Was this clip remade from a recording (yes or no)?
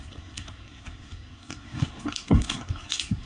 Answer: yes